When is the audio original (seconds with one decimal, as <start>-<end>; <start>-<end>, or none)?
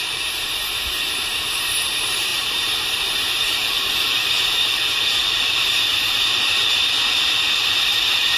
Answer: 4.6-5.3